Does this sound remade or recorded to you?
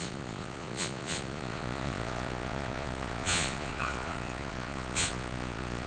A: remade